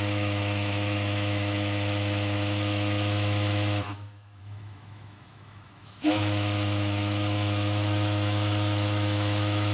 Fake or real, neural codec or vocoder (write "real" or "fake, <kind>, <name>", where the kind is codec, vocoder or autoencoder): fake, autoencoder, DAC-VAE